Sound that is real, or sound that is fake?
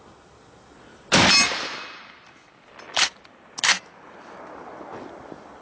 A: real